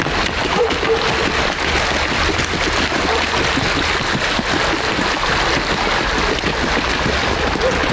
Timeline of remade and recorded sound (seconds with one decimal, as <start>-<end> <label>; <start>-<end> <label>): 0.0-7.9 recorded